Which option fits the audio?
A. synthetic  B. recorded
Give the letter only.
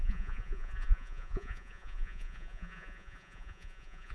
A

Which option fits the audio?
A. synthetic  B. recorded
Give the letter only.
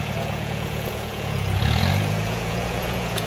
A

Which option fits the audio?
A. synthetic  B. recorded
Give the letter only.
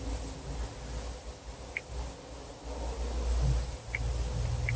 B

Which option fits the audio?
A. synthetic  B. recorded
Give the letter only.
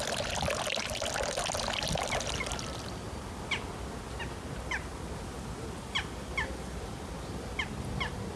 B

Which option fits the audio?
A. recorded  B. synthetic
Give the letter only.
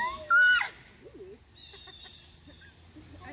A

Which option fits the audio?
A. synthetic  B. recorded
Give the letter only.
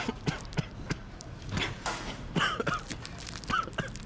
B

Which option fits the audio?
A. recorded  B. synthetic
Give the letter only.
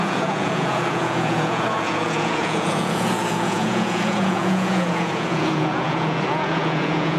B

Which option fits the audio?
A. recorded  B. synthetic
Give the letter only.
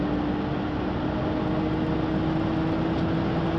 A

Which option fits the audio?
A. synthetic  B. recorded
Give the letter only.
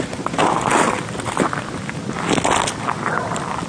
B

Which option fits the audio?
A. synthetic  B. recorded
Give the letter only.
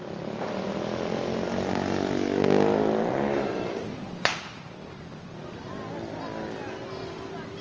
B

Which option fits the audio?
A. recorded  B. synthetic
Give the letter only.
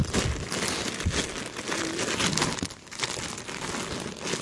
A